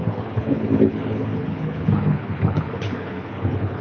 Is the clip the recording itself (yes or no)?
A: no